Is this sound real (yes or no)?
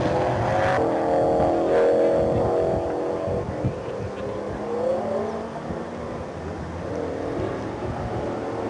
yes